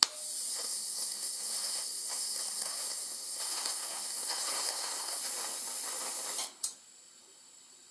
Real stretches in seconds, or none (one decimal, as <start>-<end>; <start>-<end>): 0.0-0.5; 5.2-7.9